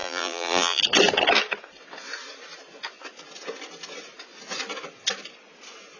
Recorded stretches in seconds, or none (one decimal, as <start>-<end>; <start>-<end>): 0.8-6.0